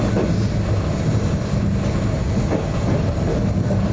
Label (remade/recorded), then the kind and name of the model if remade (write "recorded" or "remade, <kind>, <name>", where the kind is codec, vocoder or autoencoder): recorded